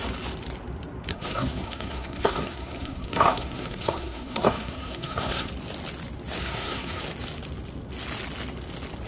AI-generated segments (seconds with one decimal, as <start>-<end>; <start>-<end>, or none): 1.1-5.5; 6.4-7.0